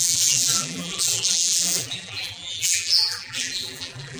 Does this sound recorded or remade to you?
remade